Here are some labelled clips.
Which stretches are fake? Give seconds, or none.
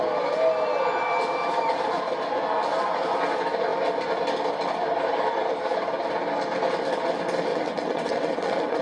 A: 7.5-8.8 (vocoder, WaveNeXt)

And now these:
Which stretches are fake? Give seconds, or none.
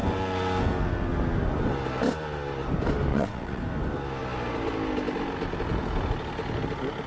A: 3.1-3.6 (vocoder, WaveNeXt)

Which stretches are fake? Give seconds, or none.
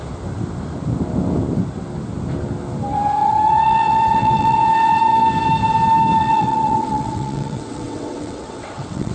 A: 3.2-5.0 (vocoder, WaveNeXt); 6.2-9.1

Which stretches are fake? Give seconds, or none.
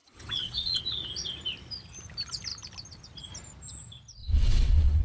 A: 0.0-0.8 (vocoder, WaveNeXt); 4.2-5.0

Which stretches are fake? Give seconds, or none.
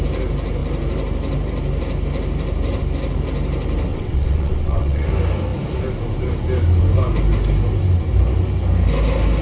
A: 3.9-5.1 (vocoder, WaveNeXt)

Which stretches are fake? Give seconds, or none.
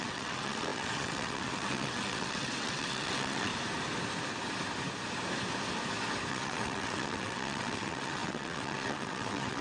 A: 0.0-3.5 (vocoder, WaveNeXt); 6.3-9.6